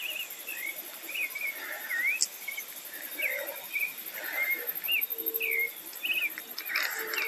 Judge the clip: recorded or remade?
recorded